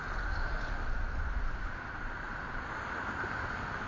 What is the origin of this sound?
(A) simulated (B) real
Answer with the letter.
B